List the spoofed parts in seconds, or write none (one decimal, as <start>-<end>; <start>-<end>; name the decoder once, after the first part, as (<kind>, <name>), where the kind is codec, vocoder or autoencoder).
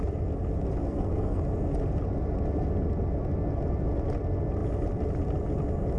0.8-1.4 (codec, SNAC)